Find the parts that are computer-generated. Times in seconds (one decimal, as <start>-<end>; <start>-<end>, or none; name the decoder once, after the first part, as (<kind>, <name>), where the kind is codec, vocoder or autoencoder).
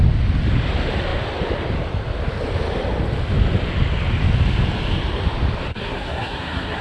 5.7-6.8 (codec, SNAC)